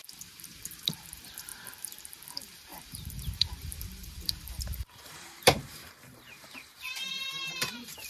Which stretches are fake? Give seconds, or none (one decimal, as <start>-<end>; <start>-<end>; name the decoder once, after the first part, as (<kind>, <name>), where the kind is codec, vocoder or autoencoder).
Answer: 0.0-8.1 (vocoder, BigVGAN v2)